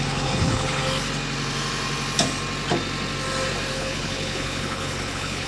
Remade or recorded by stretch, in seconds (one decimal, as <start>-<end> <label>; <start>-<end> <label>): 0.0-0.8 remade; 0.8-3.7 recorded; 3.7-5.5 remade

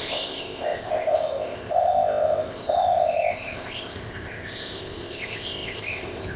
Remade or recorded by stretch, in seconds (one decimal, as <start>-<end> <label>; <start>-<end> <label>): 0.0-6.4 remade

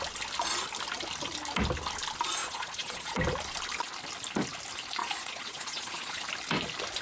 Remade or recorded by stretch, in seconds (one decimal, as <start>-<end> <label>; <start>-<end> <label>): 0.0-2.4 recorded; 2.4-3.2 remade; 3.2-5.0 recorded; 5.0-6.2 remade; 6.2-7.0 recorded

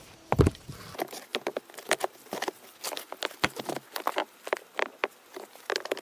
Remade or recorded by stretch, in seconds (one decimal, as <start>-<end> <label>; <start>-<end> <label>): 0.0-6.0 recorded

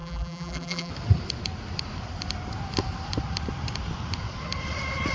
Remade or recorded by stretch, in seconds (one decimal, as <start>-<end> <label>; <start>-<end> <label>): 0.0-0.9 remade; 0.9-5.1 recorded

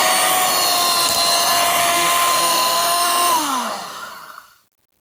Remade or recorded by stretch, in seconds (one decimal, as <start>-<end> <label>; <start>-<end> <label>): 0.0-1.8 recorded; 1.8-4.1 remade; 4.1-5.0 recorded